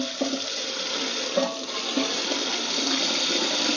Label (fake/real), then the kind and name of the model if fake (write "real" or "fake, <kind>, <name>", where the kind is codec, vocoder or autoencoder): real